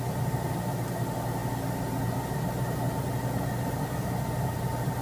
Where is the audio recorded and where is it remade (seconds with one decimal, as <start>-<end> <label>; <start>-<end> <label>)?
0.0-5.0 recorded